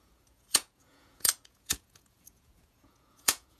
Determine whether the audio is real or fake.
fake